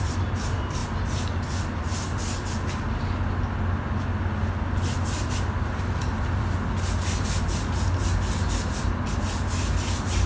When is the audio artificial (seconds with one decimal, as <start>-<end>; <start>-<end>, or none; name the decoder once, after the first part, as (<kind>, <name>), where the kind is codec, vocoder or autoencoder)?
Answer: none